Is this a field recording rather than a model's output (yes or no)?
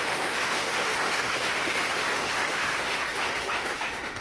no